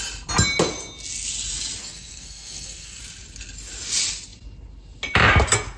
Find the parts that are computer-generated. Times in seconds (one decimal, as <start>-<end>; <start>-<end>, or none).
1.8-3.0